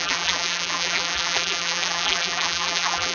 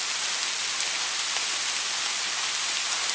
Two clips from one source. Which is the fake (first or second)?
first